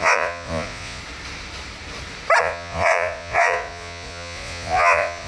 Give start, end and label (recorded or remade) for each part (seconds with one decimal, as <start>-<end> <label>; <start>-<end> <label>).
0.0-1.0 remade; 1.0-2.4 recorded; 2.4-5.3 remade